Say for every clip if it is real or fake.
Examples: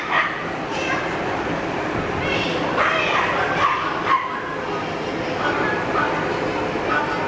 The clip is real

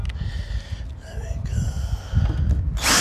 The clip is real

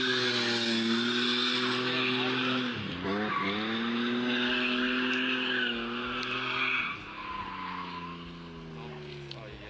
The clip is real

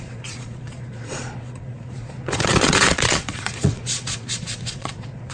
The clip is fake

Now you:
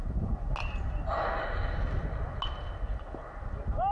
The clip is real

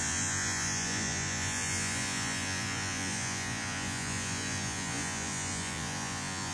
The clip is fake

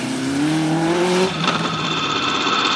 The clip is fake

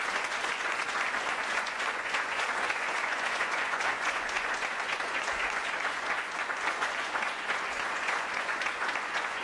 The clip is fake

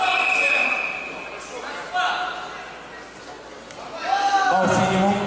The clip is real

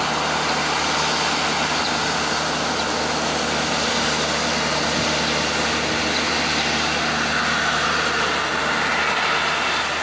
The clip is real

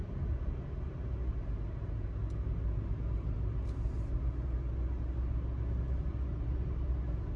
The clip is real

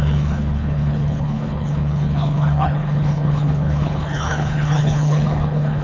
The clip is fake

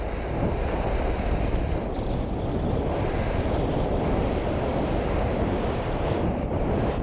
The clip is fake